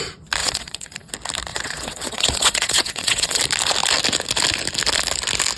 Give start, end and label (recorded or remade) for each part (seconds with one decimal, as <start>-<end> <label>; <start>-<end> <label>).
0.0-0.4 recorded; 0.4-1.1 remade; 1.1-1.5 recorded; 1.5-3.4 remade; 3.4-5.6 recorded